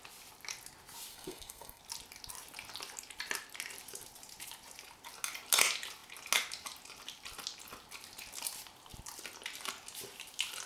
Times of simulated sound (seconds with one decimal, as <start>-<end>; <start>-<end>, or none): 1.1-1.8